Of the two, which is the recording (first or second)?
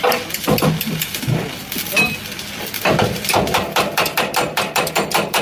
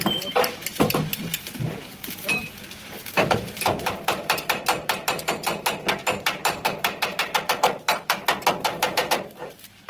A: first